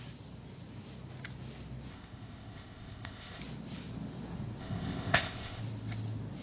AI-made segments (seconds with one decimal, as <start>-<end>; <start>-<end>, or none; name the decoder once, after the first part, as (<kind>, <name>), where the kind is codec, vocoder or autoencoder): 1.9-3.4 (codec, ZipCodec); 4.6-5.6